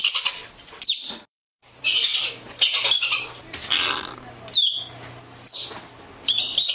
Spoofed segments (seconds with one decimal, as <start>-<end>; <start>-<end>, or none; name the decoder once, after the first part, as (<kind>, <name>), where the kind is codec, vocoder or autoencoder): 0.0-0.4 (vocoder, BigVGAN v2); 1.1-2.1; 5.7-6.7